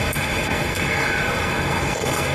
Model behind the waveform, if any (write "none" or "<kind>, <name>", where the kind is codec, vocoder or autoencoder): codec, SNAC